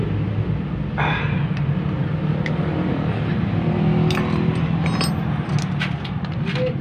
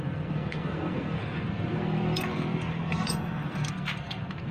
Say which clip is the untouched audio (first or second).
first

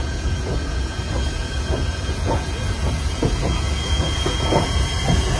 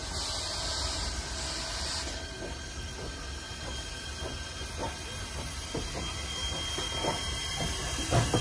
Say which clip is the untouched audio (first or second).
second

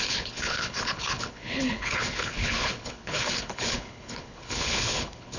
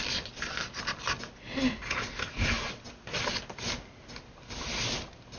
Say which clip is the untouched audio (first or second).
second